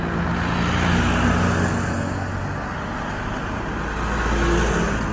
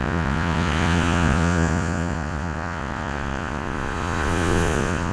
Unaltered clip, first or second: first